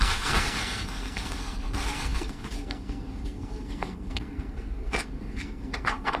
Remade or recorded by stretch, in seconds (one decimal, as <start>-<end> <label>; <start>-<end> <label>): 0.0-6.2 remade